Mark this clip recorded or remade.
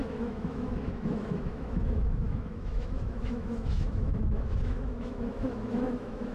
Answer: remade